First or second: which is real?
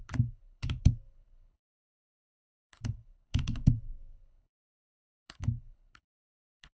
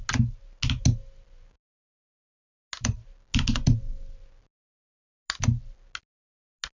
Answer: second